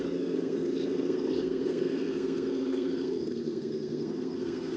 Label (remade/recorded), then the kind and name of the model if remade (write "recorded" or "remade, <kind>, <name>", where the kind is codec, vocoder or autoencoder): remade, codec, SNAC